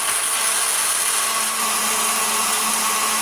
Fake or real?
real